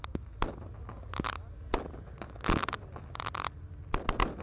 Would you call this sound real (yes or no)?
yes